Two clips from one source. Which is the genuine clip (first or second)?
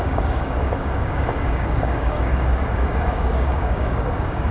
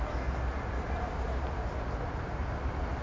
second